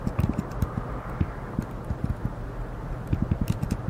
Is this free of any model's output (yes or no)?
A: yes